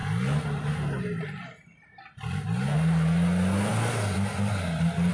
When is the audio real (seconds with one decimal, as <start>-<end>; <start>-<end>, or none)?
0.0-5.1